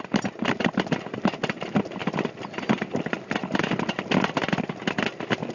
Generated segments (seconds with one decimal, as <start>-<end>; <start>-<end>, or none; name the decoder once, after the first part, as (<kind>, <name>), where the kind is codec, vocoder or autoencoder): none